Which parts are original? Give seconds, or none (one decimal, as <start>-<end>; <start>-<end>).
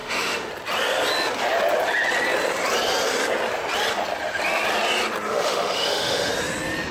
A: 0.5-5.3; 6.3-6.9